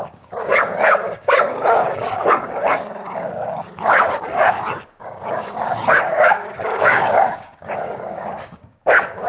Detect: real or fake fake